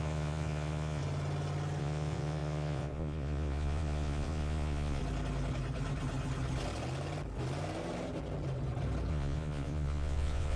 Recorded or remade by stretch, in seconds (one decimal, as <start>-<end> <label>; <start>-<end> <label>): 0.0-1.0 remade; 1.0-1.8 recorded; 1.8-5.0 remade; 5.0-9.1 recorded; 9.1-10.6 remade